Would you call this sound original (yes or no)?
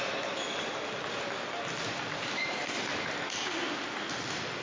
yes